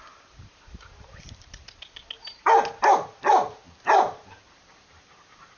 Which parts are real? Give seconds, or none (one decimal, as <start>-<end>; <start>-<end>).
1.6-3.3